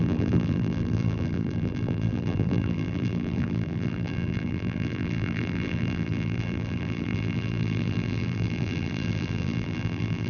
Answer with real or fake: fake